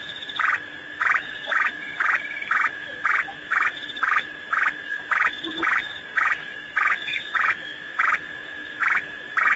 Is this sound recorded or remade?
remade